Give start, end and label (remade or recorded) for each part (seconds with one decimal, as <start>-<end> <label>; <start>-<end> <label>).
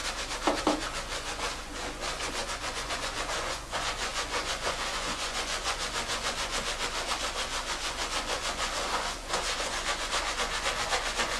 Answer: 0.0-0.6 recorded; 0.6-11.4 remade